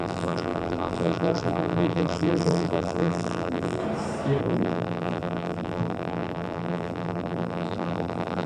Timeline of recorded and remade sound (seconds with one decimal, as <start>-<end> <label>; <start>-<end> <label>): 0.0-3.8 remade; 3.8-4.4 recorded; 4.4-8.5 remade